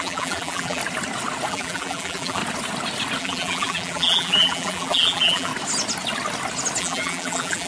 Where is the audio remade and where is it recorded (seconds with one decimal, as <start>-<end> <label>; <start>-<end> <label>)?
0.0-0.8 remade; 0.8-1.5 recorded; 1.5-2.4 remade; 2.4-3.2 recorded; 3.2-5.5 remade; 5.5-6.8 recorded; 6.8-7.7 remade